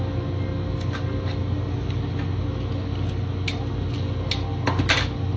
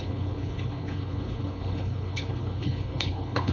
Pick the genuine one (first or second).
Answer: first